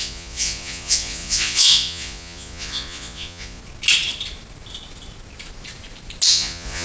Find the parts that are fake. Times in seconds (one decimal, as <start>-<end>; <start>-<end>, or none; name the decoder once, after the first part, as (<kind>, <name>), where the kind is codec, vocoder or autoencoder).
0.0-3.6 (vocoder, Vocos); 6.3-6.8